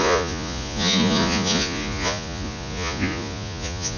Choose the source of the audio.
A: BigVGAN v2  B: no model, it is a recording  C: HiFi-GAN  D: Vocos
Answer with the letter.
D